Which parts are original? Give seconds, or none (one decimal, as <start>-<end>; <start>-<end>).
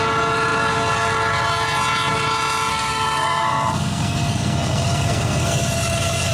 0.0-2.7